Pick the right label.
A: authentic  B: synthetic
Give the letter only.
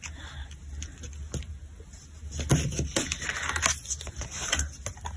A